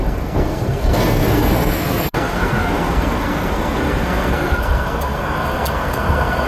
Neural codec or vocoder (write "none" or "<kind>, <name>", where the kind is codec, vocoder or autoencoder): codec, SNAC